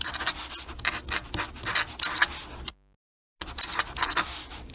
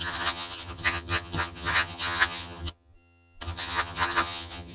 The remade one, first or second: second